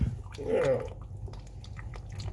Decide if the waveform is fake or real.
real